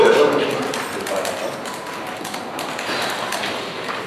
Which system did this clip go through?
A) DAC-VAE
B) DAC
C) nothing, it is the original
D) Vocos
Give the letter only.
C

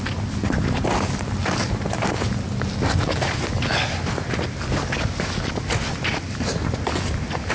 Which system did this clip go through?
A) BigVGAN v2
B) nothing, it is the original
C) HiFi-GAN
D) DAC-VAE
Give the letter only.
B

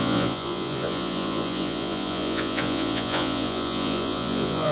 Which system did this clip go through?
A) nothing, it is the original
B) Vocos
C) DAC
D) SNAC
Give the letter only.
B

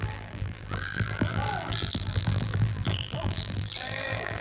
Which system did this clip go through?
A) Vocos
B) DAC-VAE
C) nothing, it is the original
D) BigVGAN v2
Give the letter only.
D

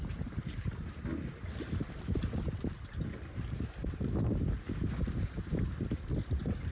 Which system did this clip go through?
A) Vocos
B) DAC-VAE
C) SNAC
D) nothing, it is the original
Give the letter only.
D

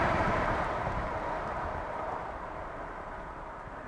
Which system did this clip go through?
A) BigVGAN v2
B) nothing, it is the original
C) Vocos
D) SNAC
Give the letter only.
A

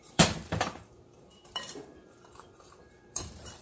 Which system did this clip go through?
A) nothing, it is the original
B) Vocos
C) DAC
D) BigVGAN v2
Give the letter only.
D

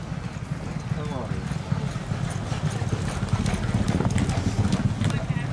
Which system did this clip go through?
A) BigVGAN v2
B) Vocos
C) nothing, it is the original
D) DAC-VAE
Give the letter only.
C